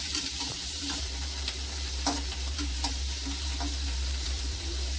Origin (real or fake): fake